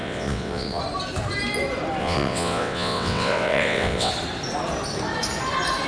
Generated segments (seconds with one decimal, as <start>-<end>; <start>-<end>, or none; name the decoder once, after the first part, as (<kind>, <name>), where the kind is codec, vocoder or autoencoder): 0.0-0.8 (vocoder, WaveNeXt); 2.0-4.1